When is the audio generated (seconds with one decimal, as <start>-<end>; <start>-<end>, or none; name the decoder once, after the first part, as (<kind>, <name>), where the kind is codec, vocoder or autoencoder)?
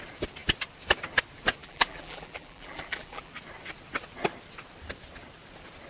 1.6-3.3 (vocoder, BigVGAN v2)